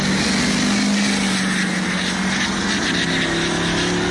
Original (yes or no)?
yes